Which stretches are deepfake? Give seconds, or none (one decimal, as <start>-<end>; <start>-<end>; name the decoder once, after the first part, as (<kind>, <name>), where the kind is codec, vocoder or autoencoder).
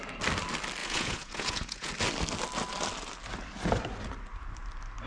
0.8-1.9 (vocoder, Vocos)